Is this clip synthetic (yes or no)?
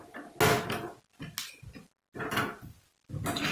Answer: no